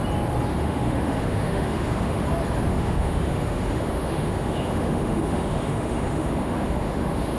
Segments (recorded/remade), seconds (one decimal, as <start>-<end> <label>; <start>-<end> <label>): 0.0-0.6 recorded; 0.6-2.2 remade; 2.2-2.7 recorded; 2.7-7.4 remade